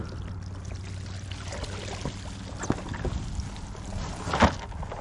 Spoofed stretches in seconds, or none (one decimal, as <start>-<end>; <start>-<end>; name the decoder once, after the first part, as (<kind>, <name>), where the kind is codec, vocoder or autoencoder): none